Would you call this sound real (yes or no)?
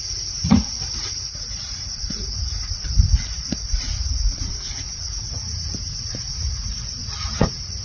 no